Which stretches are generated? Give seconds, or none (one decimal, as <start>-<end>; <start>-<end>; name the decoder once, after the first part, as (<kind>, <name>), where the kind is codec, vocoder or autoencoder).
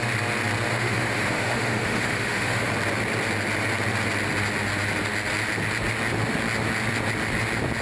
0.7-2.7 (autoencoder, DAC-VAE)